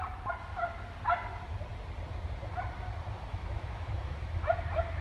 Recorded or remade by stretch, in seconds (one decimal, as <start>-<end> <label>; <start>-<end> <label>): 0.0-3.3 recorded; 3.3-4.5 remade; 4.5-5.0 recorded